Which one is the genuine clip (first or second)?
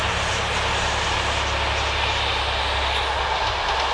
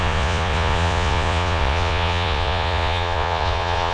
first